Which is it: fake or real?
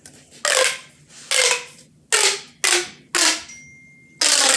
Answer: real